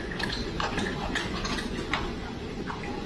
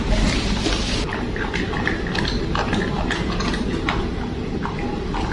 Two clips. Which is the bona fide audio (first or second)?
second